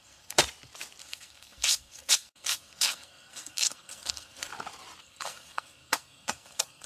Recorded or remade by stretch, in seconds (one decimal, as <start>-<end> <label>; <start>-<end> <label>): 0.0-0.4 remade; 0.4-1.0 recorded; 1.0-4.5 remade; 4.5-5.0 recorded; 5.0-6.9 remade